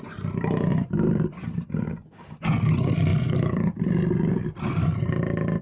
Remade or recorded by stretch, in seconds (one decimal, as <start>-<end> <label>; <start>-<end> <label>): 0.0-0.7 recorded; 0.7-1.8 remade; 1.8-3.1 recorded; 3.1-5.1 remade; 5.1-5.6 recorded